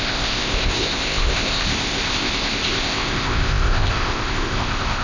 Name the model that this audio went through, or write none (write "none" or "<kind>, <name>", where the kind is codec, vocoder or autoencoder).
codec, ZipCodec